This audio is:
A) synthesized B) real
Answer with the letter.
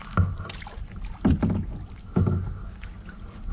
B